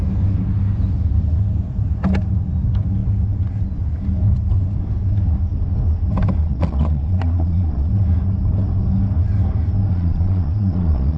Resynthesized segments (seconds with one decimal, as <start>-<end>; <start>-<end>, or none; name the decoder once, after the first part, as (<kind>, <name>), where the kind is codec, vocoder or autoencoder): 6.4-7.9 (vocoder, Vocos); 9.9-11.2